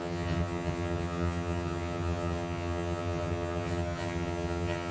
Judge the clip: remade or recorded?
remade